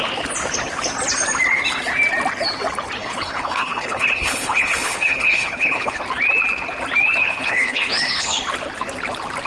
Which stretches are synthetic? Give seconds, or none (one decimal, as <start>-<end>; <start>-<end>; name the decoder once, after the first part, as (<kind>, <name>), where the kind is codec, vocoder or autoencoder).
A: 3.0-6.0 (codec, HILCodec); 7.2-8.4